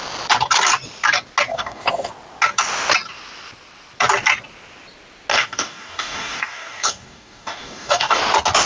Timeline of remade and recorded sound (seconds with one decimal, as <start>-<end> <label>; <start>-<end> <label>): 0.0-1.5 recorded; 1.5-2.1 remade; 2.1-5.3 recorded; 5.3-8.2 remade; 8.2-8.7 recorded